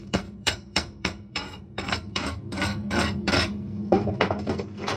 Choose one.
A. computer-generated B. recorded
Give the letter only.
A